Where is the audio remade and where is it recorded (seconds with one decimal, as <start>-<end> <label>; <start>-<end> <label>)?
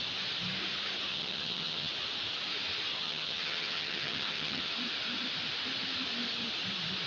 0.0-1.1 recorded; 1.1-1.9 remade; 1.9-3.0 recorded; 3.0-4.7 remade; 4.7-7.1 recorded